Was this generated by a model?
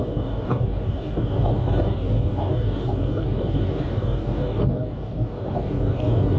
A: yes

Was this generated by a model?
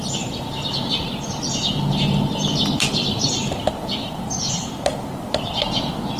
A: no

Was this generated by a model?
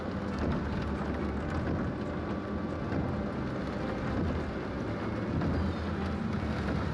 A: no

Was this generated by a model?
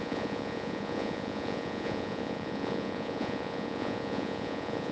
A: yes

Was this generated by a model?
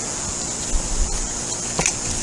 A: no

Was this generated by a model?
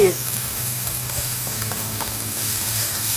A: yes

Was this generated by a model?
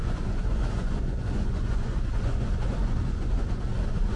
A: yes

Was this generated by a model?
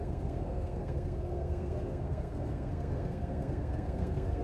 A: yes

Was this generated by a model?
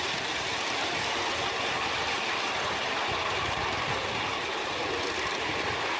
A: no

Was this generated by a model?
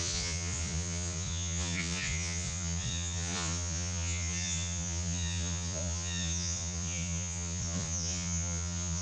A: yes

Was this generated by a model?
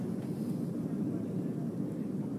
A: no